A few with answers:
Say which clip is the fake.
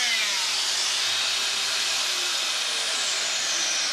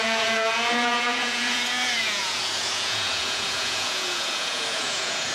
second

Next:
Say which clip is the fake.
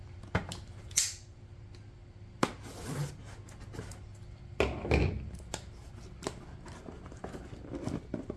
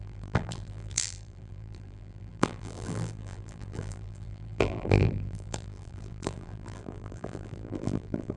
second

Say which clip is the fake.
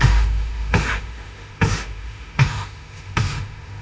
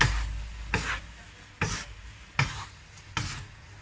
first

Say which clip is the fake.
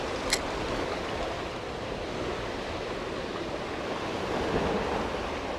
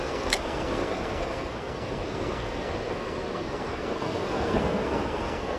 second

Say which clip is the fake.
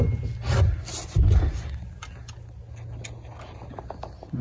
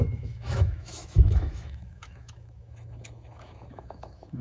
second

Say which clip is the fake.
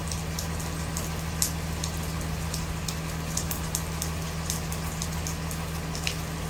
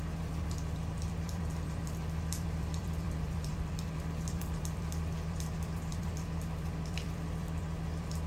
second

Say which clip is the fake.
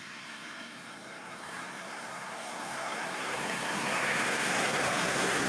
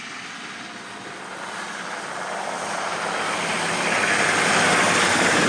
first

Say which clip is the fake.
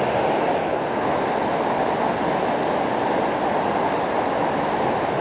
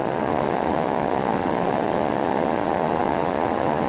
second